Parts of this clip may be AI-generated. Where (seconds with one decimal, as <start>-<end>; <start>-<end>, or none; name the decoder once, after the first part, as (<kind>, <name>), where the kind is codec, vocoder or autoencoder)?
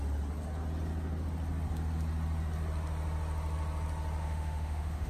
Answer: 4.2-5.1 (autoencoder, DAC-VAE)